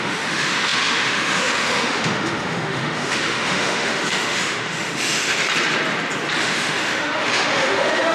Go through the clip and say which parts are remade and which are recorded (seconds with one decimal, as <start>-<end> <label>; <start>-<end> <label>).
0.0-5.4 remade; 5.4-6.4 recorded; 6.4-8.1 remade